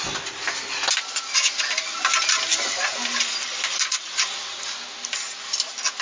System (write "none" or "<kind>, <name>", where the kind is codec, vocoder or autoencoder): none